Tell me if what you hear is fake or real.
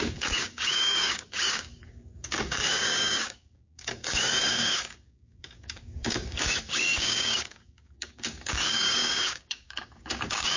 fake